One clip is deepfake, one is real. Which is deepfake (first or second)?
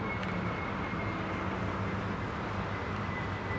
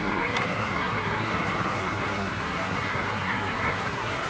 second